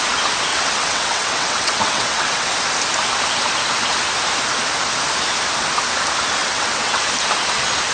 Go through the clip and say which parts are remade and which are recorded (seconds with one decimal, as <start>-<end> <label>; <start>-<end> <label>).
0.0-0.5 recorded; 0.5-2.5 remade; 2.5-6.4 recorded; 6.4-7.0 remade; 7.0-7.9 recorded